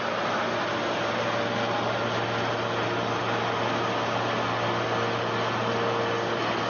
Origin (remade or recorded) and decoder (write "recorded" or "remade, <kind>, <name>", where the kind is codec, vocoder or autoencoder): recorded